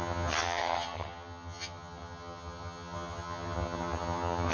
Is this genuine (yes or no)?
no